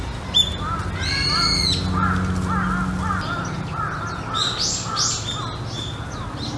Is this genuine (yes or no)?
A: yes